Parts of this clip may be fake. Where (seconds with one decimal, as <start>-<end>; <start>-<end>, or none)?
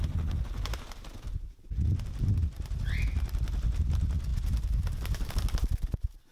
4.3-5.3